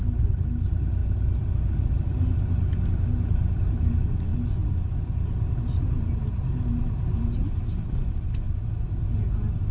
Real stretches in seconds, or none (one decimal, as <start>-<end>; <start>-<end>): 0.0-1.0; 1.5-4.3; 5.0-9.7